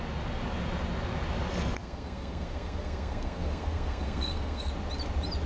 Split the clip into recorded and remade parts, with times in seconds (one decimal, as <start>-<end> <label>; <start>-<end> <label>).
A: 0.0-1.8 recorded; 1.8-4.7 remade; 4.7-5.5 recorded